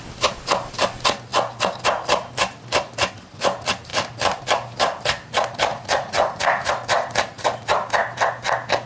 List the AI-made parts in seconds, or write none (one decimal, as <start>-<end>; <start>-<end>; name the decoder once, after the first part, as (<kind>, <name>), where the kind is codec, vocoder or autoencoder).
5.7-6.7 (vocoder, Vocos)